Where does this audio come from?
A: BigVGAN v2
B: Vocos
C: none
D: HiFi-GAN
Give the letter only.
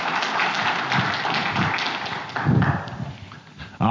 C